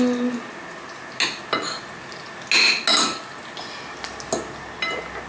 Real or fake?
real